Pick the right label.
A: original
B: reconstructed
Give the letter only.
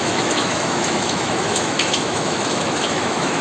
B